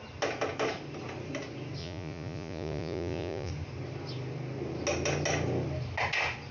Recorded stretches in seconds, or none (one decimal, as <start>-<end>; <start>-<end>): 0.0-1.8; 3.5-6.5